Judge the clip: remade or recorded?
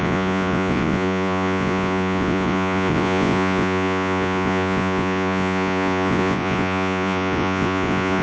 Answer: remade